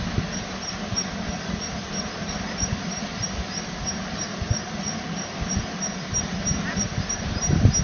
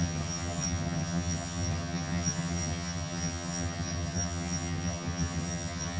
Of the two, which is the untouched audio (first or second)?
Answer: first